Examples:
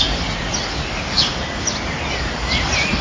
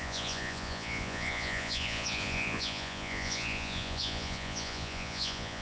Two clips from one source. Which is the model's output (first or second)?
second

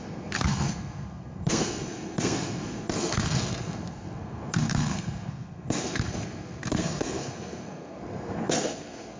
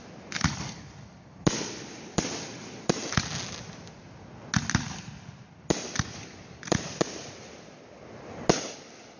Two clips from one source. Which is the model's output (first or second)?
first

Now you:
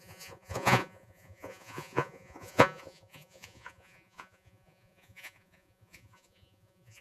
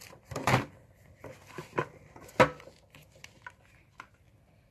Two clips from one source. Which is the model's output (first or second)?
first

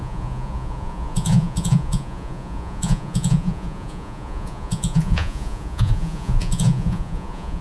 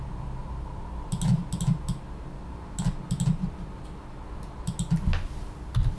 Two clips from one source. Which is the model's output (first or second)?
first